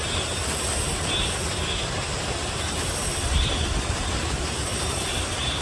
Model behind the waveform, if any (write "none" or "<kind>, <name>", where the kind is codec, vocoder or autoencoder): none